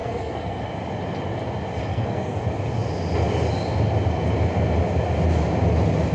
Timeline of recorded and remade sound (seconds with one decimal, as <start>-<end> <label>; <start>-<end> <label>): 0.0-0.6 remade; 0.6-1.9 recorded; 1.9-2.4 remade; 2.4-6.1 recorded